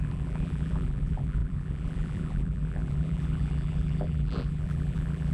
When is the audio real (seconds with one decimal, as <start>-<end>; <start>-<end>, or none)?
none